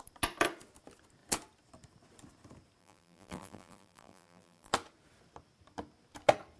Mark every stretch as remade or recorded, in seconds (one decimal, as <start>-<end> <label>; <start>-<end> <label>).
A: 0.0-2.8 recorded; 2.8-4.7 remade; 4.7-6.6 recorded